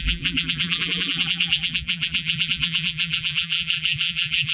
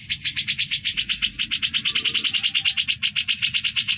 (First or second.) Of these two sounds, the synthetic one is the first